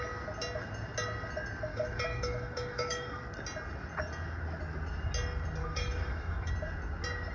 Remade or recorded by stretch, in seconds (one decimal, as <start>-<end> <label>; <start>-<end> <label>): 0.0-1.7 recorded; 1.7-3.2 remade; 3.2-5.6 recorded; 5.6-6.5 remade; 6.5-7.3 recorded

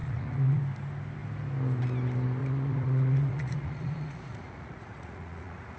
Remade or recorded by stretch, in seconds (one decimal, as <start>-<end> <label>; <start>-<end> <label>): 0.0-0.6 remade; 0.6-2.4 recorded; 2.4-5.8 remade